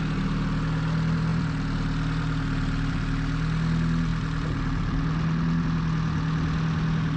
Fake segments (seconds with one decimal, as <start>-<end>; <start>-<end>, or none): none